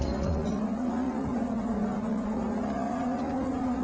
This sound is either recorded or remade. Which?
remade